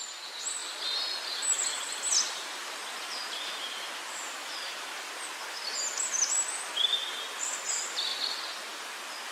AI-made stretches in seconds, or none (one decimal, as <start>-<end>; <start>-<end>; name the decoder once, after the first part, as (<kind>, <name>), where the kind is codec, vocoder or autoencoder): none